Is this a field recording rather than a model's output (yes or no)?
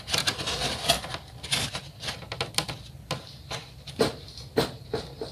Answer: yes